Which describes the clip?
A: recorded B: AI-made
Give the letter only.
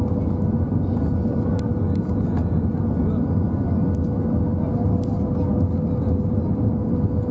A